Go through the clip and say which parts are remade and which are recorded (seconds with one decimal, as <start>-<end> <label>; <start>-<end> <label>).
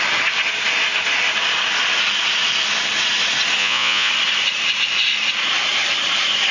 0.0-3.6 recorded; 3.6-4.1 remade; 4.1-6.5 recorded